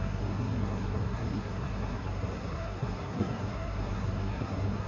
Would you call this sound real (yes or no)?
no